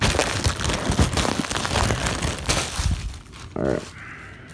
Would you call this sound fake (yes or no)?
no